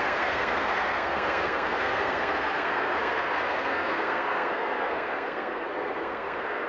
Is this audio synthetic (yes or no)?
yes